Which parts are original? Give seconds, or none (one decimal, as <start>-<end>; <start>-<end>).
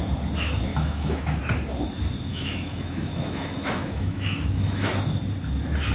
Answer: 0.0-0.7; 1.4-2.3; 4.9-5.9